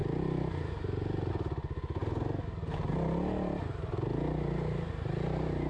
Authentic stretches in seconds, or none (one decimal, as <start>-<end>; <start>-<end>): 0.0-5.7